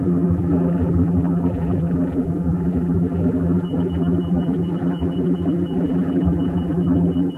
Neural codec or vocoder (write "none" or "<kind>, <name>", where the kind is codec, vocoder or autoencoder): vocoder, BigVGAN v2